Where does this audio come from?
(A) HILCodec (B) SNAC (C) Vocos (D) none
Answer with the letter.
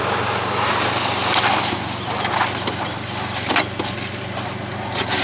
D